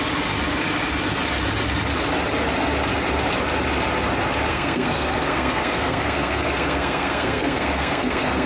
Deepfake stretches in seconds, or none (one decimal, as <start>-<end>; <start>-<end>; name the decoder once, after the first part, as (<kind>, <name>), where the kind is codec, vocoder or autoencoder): 4.5-8.5 (codec, SNAC)